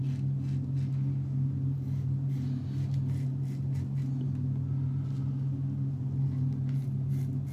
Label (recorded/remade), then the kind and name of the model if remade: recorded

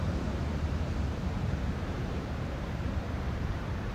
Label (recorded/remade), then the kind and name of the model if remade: remade, vocoder, BigVGAN v2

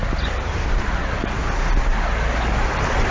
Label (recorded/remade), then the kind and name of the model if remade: recorded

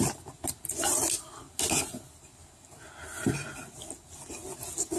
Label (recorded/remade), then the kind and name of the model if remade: recorded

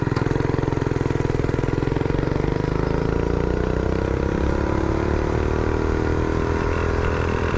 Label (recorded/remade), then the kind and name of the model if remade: recorded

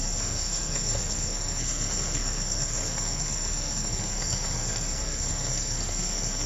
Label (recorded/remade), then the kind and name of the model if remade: remade, codec, SNAC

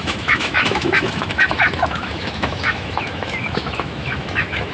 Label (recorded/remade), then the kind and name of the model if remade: remade, autoencoder, DAC-VAE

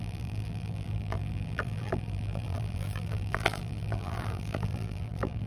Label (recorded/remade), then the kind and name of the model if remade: remade, vocoder, BigVGAN v2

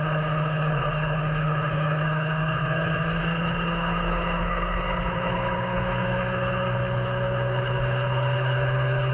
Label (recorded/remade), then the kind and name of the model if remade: remade, codec, HILCodec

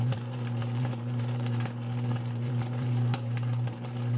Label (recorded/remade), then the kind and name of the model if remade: remade, vocoder, BigVGAN v2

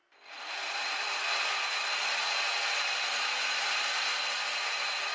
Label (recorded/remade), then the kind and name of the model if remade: recorded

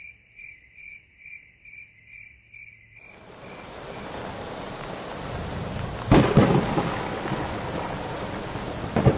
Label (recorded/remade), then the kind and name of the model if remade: recorded